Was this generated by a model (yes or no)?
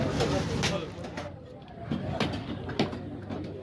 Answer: no